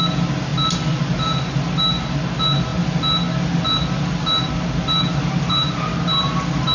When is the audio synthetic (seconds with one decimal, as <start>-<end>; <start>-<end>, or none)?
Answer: none